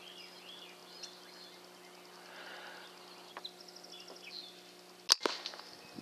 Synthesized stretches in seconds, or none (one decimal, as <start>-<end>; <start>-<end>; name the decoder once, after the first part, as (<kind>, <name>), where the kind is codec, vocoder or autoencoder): none